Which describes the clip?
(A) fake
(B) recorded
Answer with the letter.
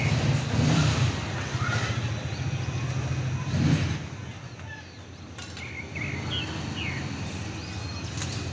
B